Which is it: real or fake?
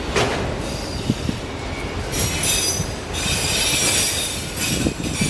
real